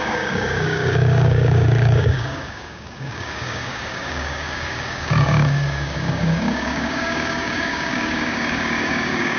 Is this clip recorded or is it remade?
remade